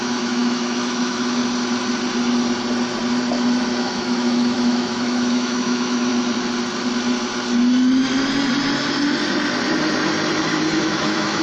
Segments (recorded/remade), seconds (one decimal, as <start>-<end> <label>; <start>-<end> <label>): 0.0-1.4 remade; 1.4-3.8 recorded; 3.8-6.1 remade; 6.1-10.8 recorded; 10.8-11.4 remade